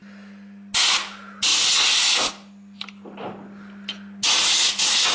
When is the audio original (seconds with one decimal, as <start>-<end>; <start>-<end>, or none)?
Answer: 0.0-5.1